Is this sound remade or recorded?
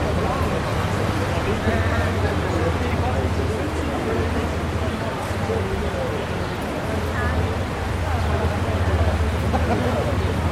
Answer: recorded